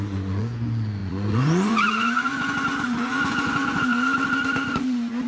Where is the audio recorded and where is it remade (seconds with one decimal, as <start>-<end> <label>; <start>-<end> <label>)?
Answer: 0.0-3.8 remade; 3.8-4.7 recorded; 4.7-5.3 remade